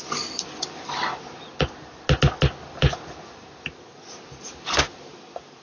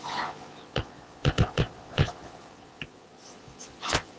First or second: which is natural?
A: first